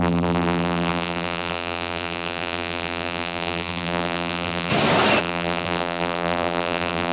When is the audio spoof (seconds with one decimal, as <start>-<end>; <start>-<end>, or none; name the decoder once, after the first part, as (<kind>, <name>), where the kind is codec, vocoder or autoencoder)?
0.0-4.7 (vocoder, BigVGAN v2); 5.2-7.1